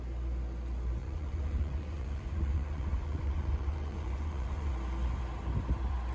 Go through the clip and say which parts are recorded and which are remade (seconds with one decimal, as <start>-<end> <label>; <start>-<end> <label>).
0.0-1.0 recorded; 1.0-4.7 remade; 4.7-6.1 recorded